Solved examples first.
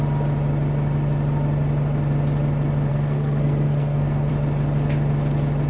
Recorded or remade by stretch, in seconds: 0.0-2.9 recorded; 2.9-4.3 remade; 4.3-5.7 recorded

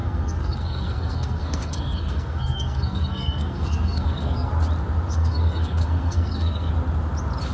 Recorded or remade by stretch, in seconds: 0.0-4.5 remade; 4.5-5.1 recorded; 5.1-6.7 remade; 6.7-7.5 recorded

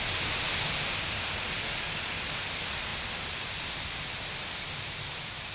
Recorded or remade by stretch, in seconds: 0.0-2.9 recorded; 2.9-4.1 remade; 4.1-5.5 recorded

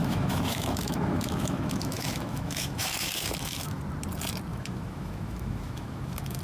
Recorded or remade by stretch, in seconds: 0.0-3.8 remade; 3.8-4.5 recorded; 4.5-6.4 remade